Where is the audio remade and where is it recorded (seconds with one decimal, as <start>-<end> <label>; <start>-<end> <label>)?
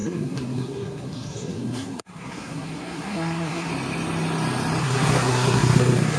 0.0-3.7 remade; 3.7-4.8 recorded; 4.8-6.2 remade